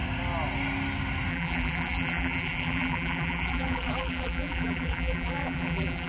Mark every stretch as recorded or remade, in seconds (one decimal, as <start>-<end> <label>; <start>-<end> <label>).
0.0-1.3 recorded; 1.3-6.1 remade